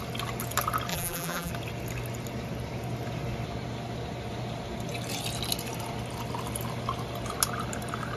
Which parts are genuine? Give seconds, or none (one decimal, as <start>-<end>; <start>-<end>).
0.0-0.9; 1.5-8.2